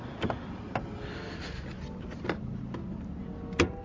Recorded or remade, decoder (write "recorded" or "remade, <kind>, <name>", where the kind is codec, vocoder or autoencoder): recorded